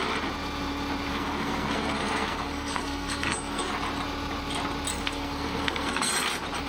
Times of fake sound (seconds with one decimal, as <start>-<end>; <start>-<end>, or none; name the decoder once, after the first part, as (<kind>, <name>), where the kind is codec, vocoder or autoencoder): 1.1-3.7 (codec, SNAC); 4.9-6.1